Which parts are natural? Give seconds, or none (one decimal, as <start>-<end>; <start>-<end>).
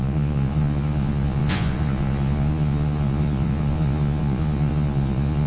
none